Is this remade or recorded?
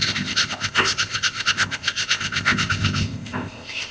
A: remade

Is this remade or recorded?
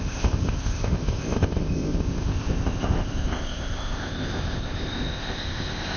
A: remade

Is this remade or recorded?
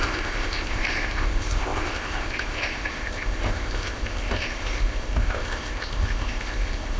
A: remade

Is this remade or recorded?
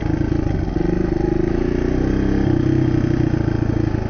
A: recorded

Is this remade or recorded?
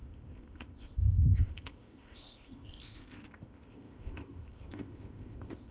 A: remade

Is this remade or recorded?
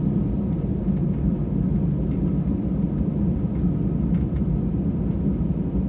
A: recorded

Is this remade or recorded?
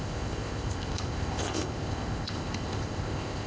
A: remade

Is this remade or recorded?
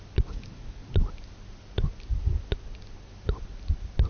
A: recorded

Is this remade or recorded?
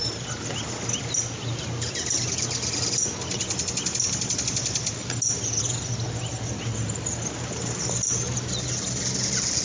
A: recorded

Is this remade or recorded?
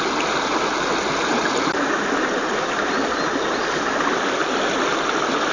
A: recorded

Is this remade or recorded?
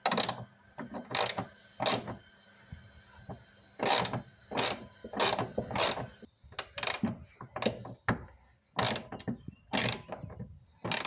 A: recorded